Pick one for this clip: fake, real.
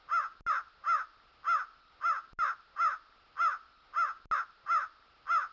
real